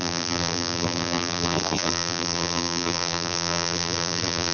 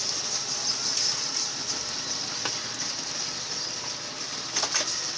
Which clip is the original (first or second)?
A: second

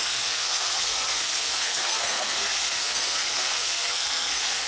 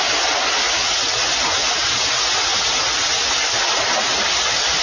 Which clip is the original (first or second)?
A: second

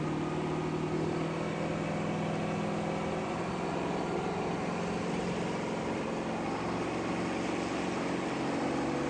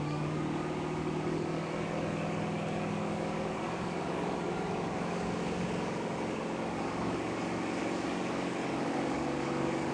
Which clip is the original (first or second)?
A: first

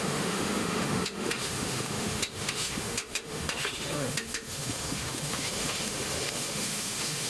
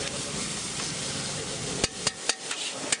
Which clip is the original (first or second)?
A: second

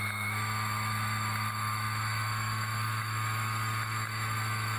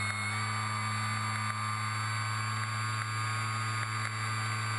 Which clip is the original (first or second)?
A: second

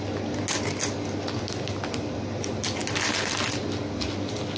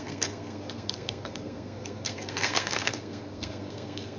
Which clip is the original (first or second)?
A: first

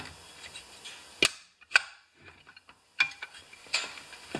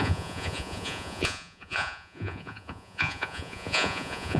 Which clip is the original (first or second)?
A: first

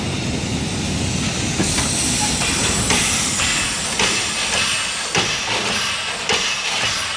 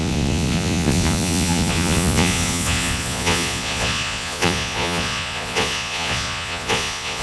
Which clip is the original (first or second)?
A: first